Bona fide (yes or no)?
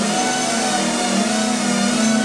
yes